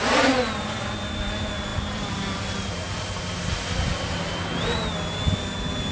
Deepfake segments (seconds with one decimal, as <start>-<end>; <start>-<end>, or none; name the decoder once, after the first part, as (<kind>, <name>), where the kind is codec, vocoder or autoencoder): 1.7-3.3 (vocoder, BigVGAN v2)